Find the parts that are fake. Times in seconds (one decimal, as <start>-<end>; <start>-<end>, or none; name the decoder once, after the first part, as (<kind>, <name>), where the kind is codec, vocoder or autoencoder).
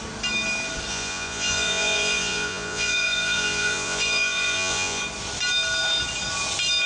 0.9-5.0 (vocoder, Vocos)